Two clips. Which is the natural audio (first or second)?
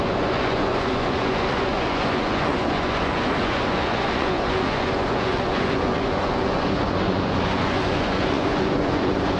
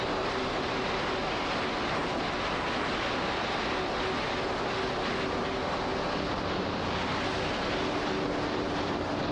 second